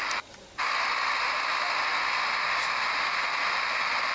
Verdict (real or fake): real